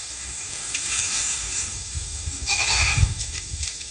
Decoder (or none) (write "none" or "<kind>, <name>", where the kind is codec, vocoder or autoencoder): codec, DAC